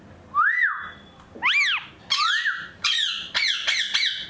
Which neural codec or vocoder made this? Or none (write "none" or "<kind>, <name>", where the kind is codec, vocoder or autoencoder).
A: none